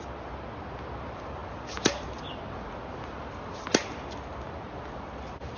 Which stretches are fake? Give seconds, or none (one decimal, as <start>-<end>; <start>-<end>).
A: none